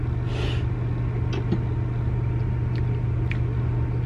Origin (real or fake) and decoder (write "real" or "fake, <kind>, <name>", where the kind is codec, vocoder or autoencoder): real